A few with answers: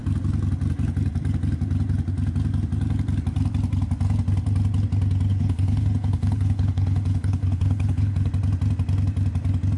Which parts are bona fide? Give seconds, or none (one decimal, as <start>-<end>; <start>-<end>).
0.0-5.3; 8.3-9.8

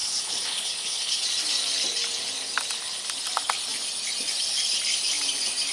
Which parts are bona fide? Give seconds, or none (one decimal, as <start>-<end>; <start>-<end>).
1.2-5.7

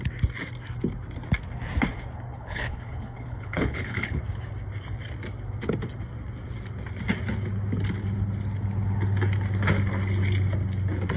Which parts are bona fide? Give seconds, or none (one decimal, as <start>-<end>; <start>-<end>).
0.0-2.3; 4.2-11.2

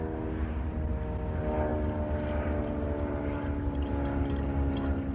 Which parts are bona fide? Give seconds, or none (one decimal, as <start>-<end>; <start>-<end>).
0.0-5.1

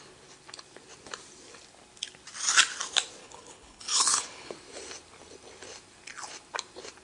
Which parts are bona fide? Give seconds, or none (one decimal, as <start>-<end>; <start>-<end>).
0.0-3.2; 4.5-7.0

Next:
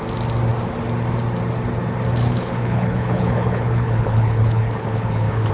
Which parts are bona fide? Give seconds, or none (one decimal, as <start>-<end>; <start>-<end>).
0.0-2.2

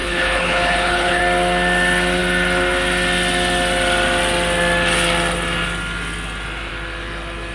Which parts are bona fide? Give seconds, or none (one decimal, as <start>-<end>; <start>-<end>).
1.2-7.5

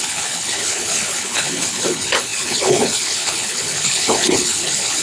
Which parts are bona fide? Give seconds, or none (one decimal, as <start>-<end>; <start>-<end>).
none